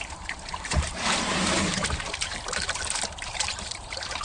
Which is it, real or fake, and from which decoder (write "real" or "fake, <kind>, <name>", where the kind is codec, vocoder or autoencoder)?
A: fake, vocoder, BigVGAN v2